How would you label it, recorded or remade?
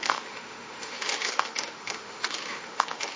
remade